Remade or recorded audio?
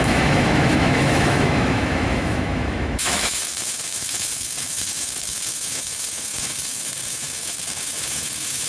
remade